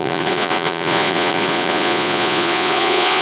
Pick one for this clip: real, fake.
fake